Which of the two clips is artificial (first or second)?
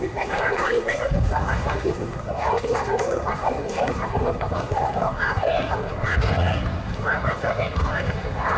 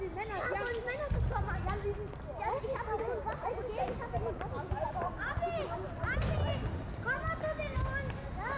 first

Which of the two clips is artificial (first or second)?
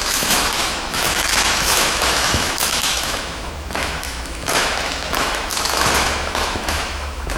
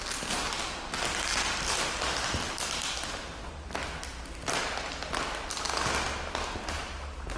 first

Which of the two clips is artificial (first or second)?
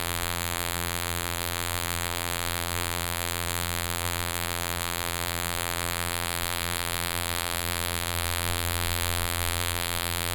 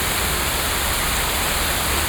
first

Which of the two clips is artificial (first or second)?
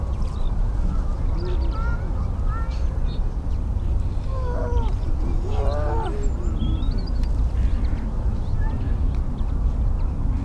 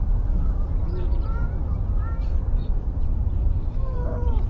second